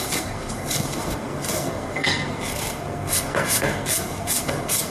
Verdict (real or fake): fake